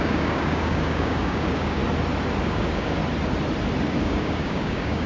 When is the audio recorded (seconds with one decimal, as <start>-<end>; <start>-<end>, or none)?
1.8-2.4; 3.0-4.0